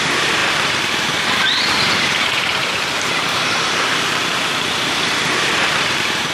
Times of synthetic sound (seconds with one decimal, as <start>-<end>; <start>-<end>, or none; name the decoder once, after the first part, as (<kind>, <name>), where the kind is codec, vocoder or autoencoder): 0.0-6.3 (vocoder, BigVGAN v2)